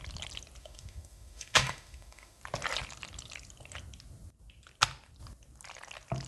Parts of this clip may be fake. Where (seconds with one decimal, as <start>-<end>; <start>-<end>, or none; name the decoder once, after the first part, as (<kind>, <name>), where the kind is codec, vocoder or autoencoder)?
0.6-2.4 (autoencoder, DAC-VAE)